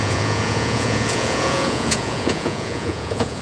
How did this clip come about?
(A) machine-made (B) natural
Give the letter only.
A